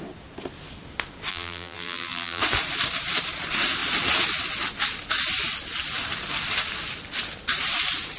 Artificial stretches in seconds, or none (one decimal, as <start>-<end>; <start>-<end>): 1.3-2.4